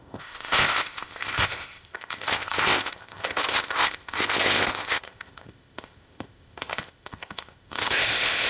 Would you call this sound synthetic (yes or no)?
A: yes